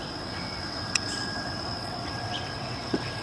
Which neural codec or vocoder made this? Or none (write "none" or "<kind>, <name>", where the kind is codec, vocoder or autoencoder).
vocoder, WaveNeXt